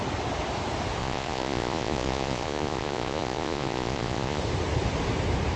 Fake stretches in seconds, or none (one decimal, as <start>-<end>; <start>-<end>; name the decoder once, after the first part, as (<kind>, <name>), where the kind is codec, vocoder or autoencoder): 1.0-4.4 (vocoder, Vocos)